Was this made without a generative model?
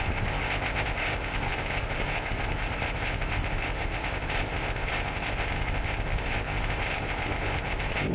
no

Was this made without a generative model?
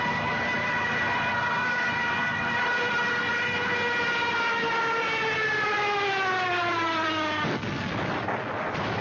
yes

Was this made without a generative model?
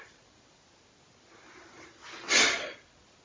yes